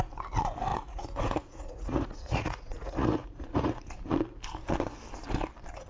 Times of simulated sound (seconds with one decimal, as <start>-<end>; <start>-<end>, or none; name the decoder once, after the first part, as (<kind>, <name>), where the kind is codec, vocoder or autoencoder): 0.7-3.8 (vocoder, Vocos)